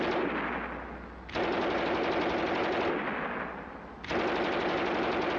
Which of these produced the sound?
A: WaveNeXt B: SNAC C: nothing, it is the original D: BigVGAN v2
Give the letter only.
C